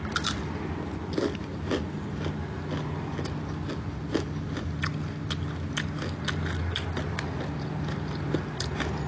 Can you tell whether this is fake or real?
real